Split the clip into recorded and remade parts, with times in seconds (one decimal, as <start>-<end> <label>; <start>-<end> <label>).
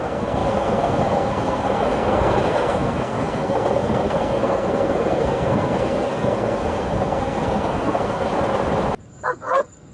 0.0-8.3 remade; 8.3-9.0 recorded; 9.0-9.9 remade